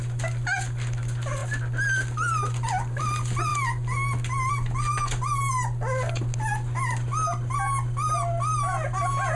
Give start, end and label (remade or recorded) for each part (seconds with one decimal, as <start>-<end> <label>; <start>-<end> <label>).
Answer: 0.0-9.4 recorded